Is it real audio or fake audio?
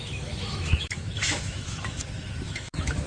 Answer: fake